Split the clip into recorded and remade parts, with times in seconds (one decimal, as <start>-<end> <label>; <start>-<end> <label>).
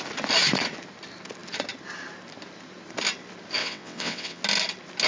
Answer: 0.0-3.6 recorded; 3.6-4.4 remade; 4.4-5.1 recorded